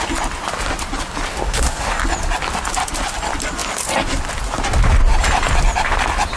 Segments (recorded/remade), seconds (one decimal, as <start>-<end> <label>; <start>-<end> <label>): 0.0-1.3 recorded; 1.3-2.0 remade; 2.0-6.4 recorded